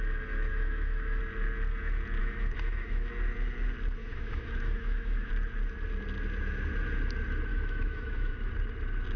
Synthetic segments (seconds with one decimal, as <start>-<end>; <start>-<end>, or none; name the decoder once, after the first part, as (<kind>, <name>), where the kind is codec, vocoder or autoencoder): 0.5-1.2 (autoencoder, DAC-VAE); 2.2-3.1; 4.0-5.3; 7.5-8.5